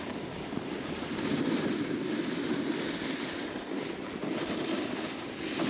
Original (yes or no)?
yes